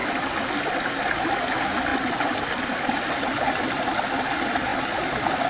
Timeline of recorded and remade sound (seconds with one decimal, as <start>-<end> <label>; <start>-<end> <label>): 0.0-5.5 recorded